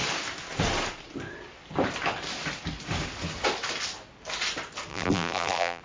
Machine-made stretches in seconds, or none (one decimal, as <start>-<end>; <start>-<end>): 4.9-5.8